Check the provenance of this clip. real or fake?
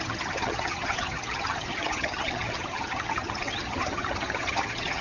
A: fake